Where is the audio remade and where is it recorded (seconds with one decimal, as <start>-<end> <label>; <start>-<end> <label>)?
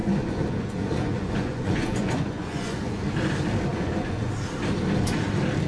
0.0-3.0 remade; 3.0-3.7 recorded; 3.7-4.3 remade; 4.3-5.7 recorded